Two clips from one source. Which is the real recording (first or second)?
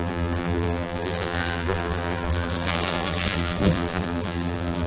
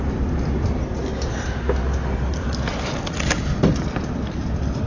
second